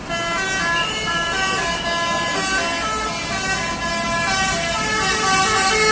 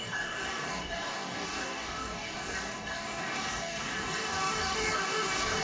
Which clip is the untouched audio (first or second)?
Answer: first